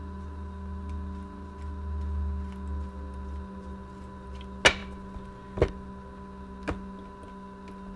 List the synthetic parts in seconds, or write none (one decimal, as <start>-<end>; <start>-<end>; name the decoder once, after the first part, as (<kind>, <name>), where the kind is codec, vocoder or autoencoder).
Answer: none